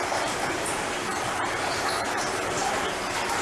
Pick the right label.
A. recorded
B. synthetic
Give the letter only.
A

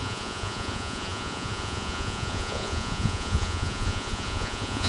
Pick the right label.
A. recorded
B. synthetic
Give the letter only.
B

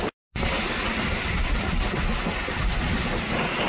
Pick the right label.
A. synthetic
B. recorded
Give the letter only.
B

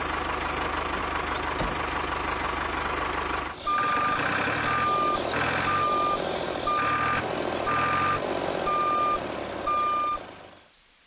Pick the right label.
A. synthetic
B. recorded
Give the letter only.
B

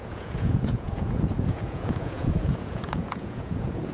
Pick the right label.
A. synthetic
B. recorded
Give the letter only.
A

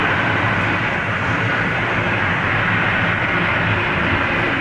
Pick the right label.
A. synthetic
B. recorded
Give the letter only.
B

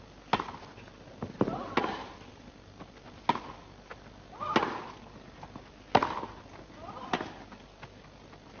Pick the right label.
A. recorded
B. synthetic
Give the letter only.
A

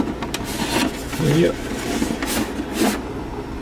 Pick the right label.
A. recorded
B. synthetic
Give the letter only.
A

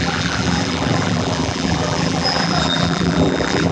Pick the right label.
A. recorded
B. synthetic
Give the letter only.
B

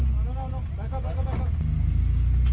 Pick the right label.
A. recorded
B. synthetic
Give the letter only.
A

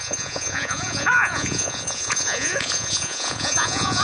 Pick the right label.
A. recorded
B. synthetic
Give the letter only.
B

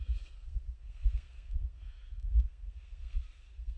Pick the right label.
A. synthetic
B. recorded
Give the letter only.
A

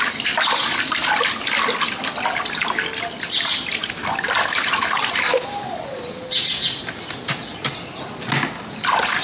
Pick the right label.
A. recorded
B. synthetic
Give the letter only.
A